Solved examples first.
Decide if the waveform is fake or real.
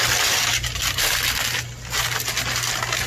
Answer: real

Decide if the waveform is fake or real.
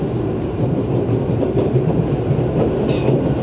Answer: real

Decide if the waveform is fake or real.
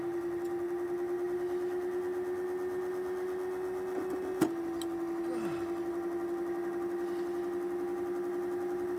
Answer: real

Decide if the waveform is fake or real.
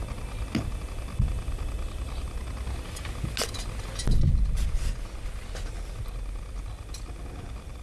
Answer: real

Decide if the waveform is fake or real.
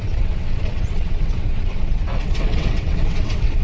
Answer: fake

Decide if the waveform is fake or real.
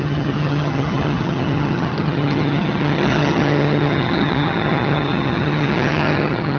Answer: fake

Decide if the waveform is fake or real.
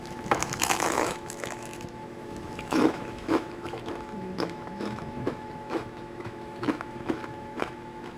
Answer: fake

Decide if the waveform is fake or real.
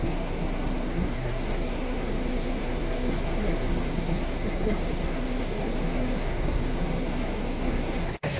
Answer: fake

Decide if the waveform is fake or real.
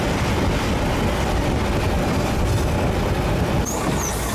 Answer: real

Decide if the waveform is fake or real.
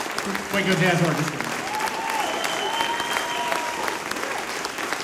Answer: real